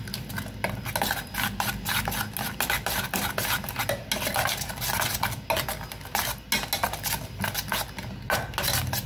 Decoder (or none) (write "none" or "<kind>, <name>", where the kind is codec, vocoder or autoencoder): none